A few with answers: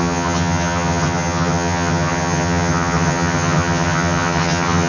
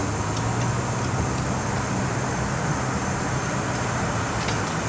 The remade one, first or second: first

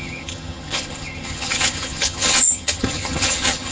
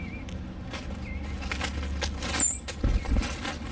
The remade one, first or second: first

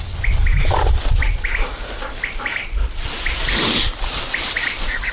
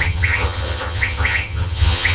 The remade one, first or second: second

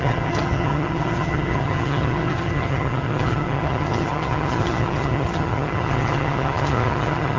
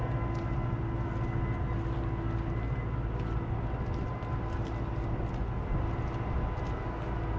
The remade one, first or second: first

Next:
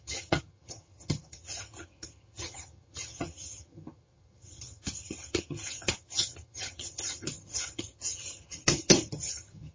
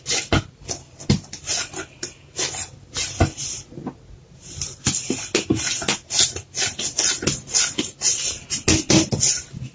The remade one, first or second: first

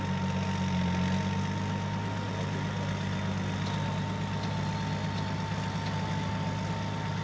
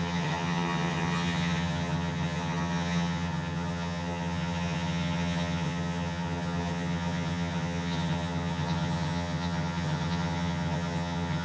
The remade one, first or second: second